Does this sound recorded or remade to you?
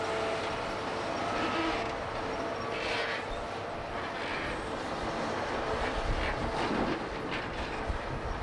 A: recorded